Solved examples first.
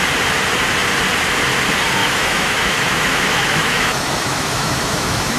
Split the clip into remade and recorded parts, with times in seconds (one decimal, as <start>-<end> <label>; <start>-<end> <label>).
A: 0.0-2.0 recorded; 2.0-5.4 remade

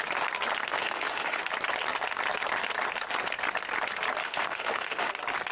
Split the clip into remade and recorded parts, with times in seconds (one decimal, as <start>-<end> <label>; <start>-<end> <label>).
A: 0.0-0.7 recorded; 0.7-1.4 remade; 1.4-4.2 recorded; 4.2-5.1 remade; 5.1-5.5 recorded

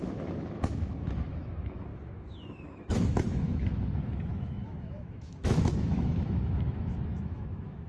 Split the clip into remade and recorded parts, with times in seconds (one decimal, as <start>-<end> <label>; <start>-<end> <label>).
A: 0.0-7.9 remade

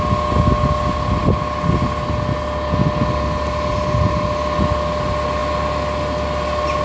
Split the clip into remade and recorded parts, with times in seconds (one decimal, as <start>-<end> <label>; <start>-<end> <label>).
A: 0.0-6.8 recorded

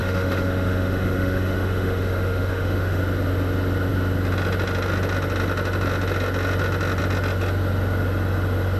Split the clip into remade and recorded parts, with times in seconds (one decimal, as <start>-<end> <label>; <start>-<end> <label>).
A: 0.0-3.0 remade; 3.0-8.8 recorded

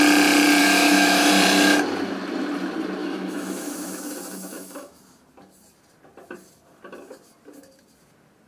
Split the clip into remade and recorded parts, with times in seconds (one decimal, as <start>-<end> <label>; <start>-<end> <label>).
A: 0.0-0.6 recorded; 0.6-1.3 remade; 1.3-3.0 recorded; 3.0-5.0 remade; 5.0-8.5 recorded

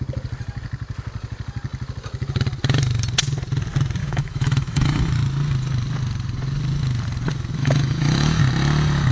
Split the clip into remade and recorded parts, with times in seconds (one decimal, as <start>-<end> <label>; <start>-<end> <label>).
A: 0.0-4.0 recorded; 4.0-5.1 remade; 5.1-7.6 recorded; 7.6-8.4 remade; 8.4-9.1 recorded